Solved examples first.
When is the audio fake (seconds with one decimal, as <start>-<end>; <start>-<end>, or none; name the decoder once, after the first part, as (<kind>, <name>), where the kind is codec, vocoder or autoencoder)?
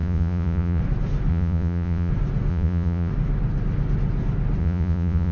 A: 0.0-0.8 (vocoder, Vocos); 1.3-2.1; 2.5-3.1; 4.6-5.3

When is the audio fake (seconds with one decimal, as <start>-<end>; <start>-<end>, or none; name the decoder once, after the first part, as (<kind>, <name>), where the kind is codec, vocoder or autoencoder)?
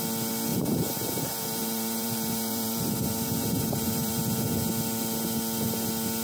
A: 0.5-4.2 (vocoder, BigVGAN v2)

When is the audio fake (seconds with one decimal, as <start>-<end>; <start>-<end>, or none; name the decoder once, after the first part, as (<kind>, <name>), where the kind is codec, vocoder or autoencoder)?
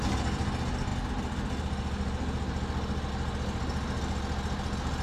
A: none